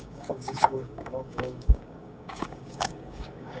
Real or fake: fake